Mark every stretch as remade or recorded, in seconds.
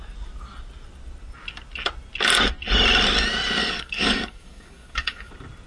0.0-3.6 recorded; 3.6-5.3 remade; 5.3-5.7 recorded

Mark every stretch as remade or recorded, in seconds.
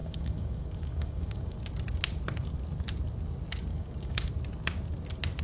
0.0-1.6 remade; 1.6-3.7 recorded; 3.7-4.3 remade; 4.3-5.4 recorded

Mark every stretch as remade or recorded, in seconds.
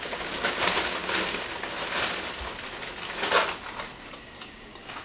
0.0-1.2 remade; 1.2-4.2 recorded; 4.2-5.0 remade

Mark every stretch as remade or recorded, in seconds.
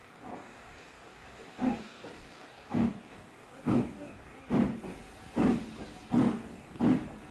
0.0-4.4 remade; 4.4-6.2 recorded; 6.2-6.8 remade; 6.8-7.3 recorded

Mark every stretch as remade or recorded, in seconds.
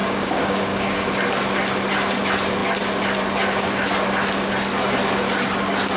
0.0-1.1 remade; 1.1-6.0 recorded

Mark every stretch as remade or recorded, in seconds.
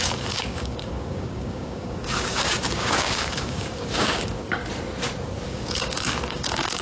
0.0-4.6 remade; 4.6-5.5 recorded; 5.5-6.8 remade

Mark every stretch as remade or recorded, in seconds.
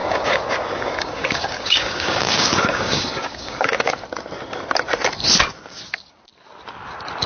0.0-3.9 remade; 3.9-7.3 recorded